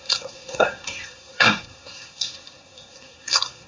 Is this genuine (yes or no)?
no